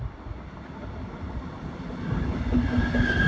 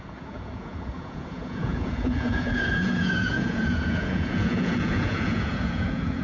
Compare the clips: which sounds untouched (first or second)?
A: first